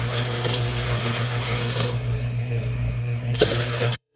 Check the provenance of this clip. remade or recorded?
remade